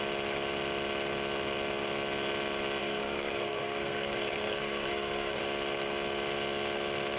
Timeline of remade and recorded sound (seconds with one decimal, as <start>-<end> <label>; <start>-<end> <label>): 0.0-2.8 recorded; 2.8-5.4 remade; 5.4-7.2 recorded